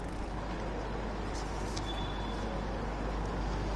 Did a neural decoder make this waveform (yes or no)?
no